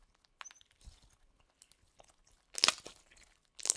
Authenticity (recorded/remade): recorded